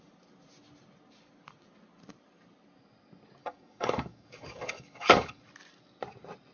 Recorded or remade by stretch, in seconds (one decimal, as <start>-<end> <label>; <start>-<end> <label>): 0.0-3.4 recorded; 3.4-5.4 remade; 5.4-6.5 recorded